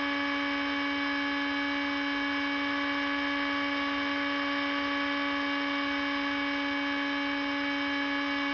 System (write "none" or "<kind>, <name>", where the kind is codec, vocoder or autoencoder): none